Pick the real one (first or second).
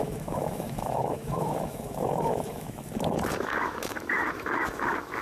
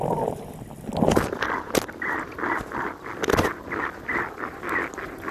second